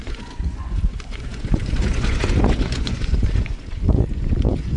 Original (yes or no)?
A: no